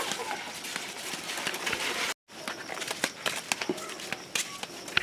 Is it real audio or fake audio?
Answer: real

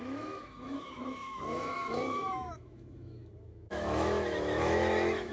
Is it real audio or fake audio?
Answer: fake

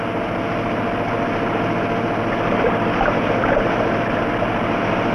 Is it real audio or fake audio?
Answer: real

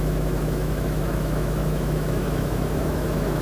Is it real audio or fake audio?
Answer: fake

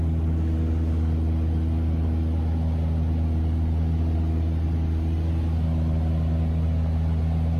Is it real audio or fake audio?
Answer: real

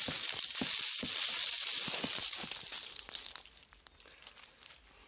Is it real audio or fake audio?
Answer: real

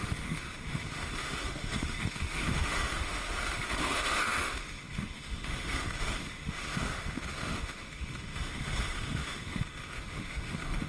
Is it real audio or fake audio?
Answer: fake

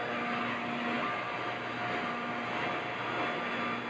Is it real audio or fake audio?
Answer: real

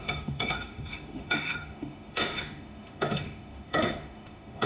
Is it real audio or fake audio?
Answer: fake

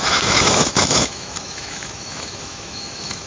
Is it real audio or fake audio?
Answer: fake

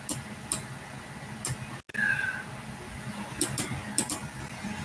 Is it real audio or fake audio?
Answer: real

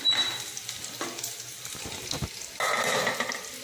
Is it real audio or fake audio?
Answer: real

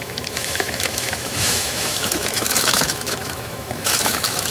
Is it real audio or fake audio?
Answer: fake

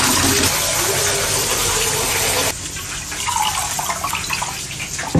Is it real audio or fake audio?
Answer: real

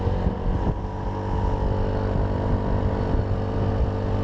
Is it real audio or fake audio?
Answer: real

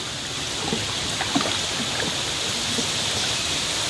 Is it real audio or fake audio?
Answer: real